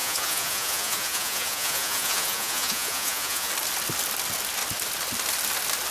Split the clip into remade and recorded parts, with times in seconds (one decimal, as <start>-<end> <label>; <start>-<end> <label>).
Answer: 0.0-3.5 remade; 3.5-5.9 recorded